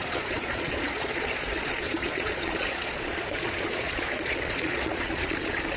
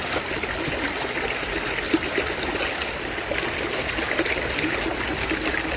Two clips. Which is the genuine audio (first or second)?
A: second